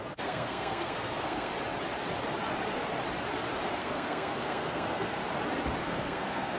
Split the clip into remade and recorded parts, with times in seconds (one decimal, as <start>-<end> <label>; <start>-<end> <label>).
0.0-1.5 remade; 1.5-3.8 recorded; 3.8-5.2 remade; 5.2-5.8 recorded; 5.8-6.6 remade